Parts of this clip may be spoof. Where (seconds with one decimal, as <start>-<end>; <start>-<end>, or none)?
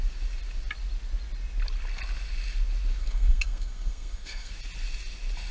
3.0-4.5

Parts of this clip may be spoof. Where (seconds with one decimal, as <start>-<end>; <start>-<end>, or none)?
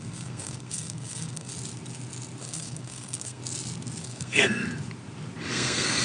0.0-1.5; 2.4-3.4; 4.0-4.6; 5.5-6.0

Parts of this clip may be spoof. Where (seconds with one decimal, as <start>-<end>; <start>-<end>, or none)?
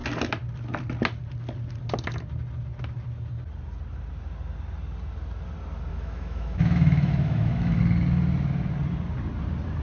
5.9-7.8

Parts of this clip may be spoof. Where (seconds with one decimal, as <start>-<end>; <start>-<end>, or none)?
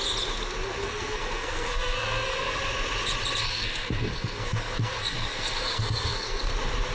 0.8-2.6; 3.4-6.5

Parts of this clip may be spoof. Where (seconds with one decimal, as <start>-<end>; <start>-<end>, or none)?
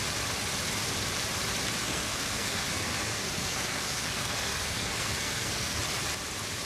1.8-5.8